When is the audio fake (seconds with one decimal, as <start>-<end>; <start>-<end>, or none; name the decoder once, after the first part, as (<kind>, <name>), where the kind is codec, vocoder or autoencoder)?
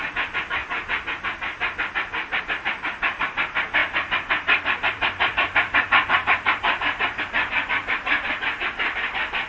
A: 3.8-7.2 (vocoder, BigVGAN v2)